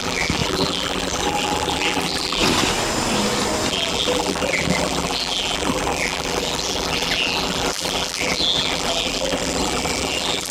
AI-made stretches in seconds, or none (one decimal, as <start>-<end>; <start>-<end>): 0.0-2.4; 3.7-10.5

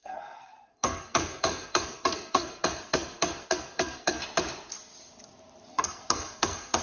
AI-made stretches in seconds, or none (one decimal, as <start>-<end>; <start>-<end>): 0.0-4.2; 5.7-6.8

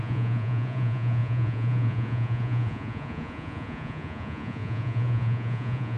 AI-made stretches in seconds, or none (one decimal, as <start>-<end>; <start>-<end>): 0.0-6.0

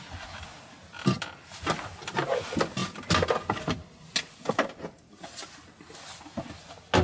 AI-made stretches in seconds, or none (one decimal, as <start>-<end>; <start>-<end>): none